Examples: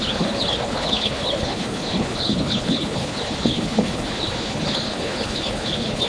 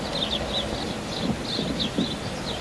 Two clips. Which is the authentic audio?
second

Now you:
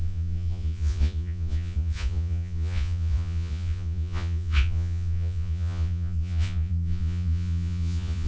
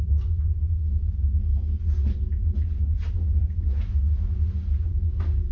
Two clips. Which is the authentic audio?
second